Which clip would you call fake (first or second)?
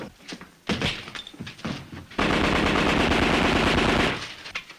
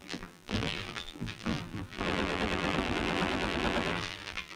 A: second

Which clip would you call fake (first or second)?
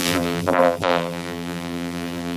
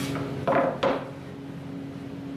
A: first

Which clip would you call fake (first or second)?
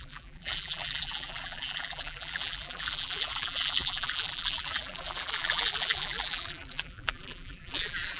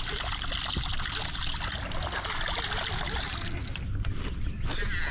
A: first